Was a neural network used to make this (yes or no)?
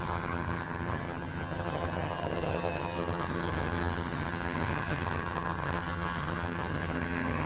yes